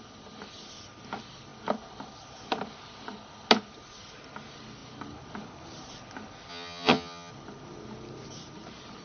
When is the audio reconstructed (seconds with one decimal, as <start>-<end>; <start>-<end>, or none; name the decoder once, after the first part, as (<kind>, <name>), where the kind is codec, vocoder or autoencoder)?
6.5-7.3 (vocoder, HiFi-GAN)